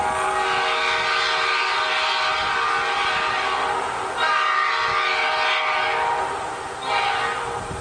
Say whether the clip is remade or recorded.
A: recorded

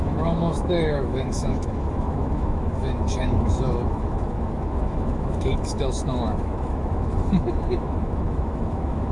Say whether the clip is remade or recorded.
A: remade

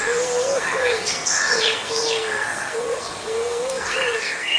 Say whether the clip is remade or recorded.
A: remade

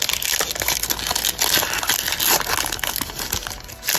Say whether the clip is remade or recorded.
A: recorded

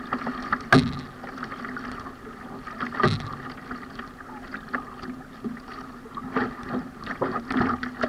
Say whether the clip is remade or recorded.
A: recorded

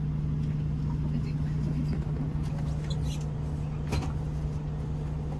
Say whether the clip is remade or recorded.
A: recorded